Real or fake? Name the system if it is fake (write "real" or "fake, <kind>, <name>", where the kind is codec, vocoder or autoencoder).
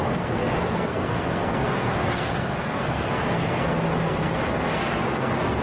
fake, codec, SNAC